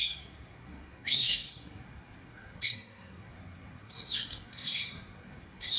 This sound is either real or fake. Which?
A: fake